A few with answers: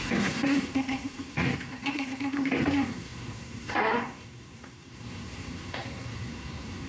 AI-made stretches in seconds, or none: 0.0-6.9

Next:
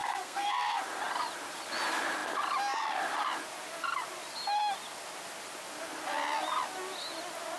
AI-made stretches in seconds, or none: 0.0-0.8

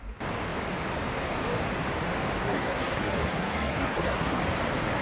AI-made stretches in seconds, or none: 2.4-4.4

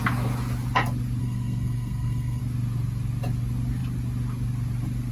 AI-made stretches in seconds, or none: 1.2-2.4

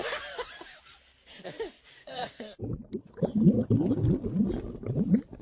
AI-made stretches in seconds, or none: 2.0-2.6

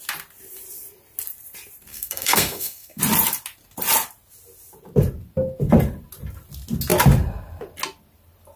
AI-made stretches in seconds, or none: 1.9-3.0

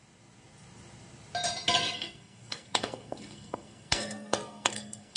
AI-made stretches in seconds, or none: 1.8-5.2